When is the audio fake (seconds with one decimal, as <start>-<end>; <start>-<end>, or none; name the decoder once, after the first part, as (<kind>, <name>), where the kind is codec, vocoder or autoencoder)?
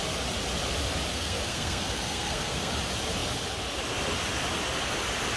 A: 1.1-2.7 (codec, SNAC)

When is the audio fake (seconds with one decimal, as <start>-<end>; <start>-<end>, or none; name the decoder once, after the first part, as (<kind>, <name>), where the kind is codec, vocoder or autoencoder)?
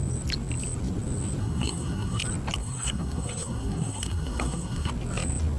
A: 1.4-2.2 (codec, SNAC); 2.6-4.9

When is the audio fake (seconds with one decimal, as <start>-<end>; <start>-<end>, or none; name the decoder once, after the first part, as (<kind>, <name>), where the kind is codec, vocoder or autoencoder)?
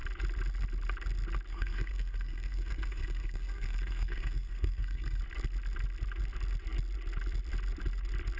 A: 1.5-5.2 (codec, SNAC)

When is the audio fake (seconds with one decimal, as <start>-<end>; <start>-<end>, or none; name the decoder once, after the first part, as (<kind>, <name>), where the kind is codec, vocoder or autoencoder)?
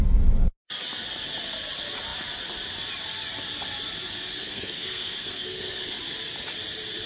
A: 4.4-6.0 (codec, SNAC)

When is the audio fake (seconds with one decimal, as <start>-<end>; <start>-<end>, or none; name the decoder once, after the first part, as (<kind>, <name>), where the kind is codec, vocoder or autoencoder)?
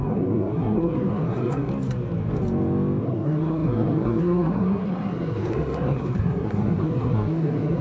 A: 0.0-1.7 (codec, SNAC); 3.0-7.8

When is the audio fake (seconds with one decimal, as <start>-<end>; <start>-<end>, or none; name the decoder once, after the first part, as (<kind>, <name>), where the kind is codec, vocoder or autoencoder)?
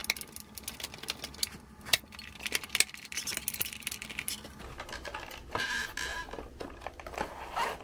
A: none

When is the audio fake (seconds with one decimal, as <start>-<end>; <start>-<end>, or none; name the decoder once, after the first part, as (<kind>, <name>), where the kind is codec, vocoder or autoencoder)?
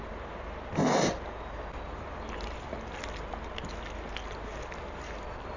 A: none